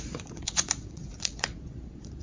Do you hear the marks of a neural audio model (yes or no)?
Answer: yes